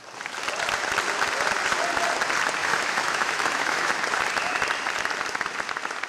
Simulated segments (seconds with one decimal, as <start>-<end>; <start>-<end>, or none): 2.6-3.9